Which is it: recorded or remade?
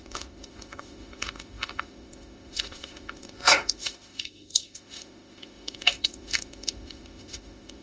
remade